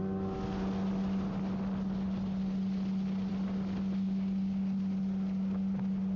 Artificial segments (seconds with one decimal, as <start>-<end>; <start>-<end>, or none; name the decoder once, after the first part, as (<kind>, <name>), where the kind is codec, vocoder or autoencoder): none